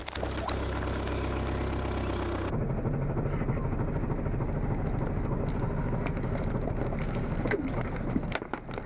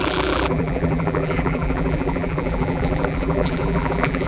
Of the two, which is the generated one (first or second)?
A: second